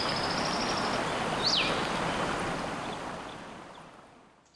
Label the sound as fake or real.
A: real